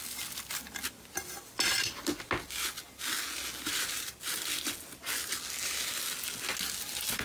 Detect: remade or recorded recorded